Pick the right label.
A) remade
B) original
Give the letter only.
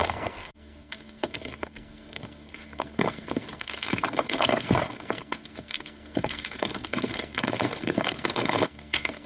A